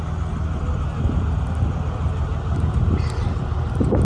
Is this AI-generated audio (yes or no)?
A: no